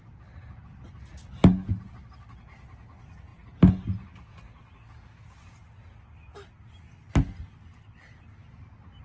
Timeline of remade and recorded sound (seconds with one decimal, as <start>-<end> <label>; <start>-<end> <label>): 0.0-9.0 recorded